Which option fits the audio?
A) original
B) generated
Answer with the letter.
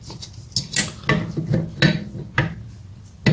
A